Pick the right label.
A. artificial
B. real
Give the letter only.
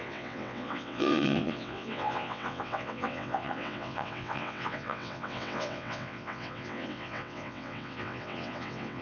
A